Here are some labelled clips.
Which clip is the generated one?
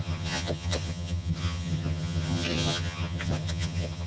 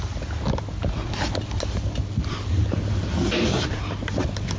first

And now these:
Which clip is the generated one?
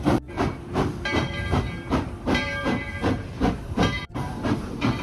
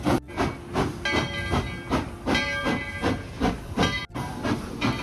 first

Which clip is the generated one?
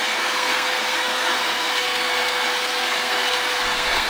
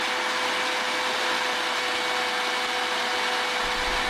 first